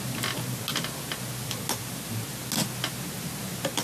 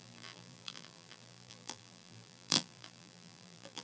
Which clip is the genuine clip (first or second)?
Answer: first